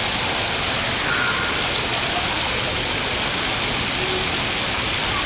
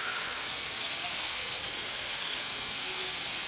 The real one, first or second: first